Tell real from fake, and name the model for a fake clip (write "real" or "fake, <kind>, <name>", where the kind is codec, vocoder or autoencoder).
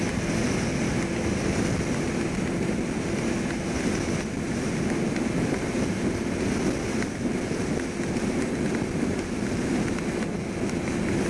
real